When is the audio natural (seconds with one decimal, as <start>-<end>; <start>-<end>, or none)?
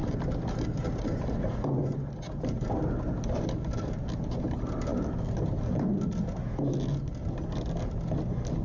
0.0-8.6